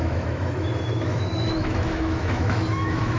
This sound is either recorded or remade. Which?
remade